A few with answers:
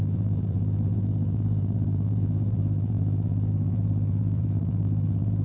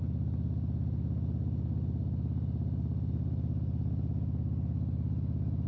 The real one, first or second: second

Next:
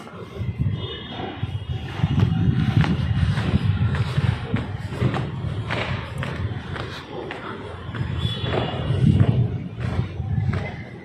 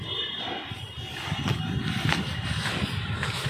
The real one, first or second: second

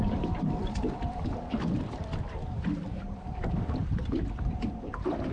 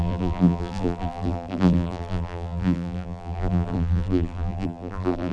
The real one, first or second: first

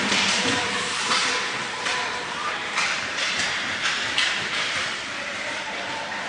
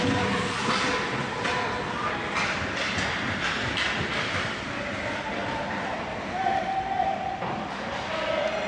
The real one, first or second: second